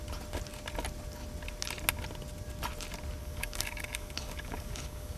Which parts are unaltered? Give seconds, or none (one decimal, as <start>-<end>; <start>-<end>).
0.0-3.2